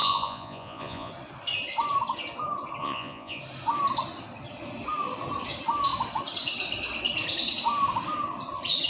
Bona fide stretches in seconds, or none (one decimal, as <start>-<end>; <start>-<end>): 1.1-2.8; 3.4-8.9